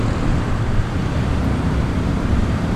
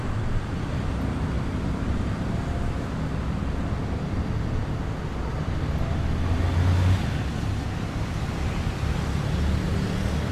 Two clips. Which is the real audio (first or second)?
second